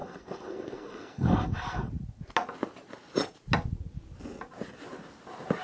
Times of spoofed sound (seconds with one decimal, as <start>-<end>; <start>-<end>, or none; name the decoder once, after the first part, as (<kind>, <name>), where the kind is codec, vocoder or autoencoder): 0.0-1.9 (codec, SNAC)